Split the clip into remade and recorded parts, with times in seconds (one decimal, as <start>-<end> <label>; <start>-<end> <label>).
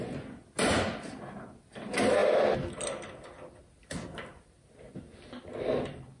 0.0-6.2 recorded